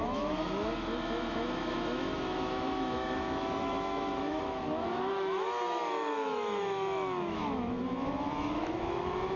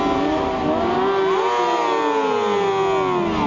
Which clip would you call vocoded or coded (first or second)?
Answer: first